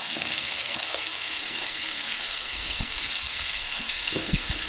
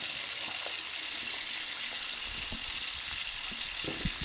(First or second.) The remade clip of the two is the first